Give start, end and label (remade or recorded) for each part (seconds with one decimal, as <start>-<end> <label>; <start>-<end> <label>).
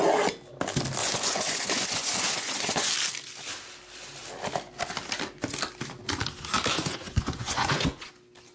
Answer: 0.0-1.0 recorded; 1.0-2.9 remade; 2.9-6.7 recorded; 6.7-8.1 remade; 8.1-8.5 recorded